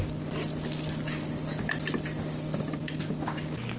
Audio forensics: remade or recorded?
recorded